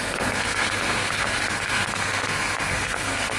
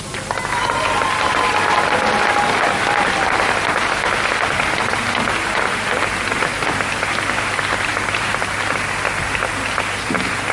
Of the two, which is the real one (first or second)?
second